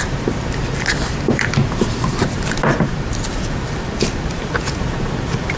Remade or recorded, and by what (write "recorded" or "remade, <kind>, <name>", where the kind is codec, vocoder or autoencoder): remade, vocoder, BigVGAN v2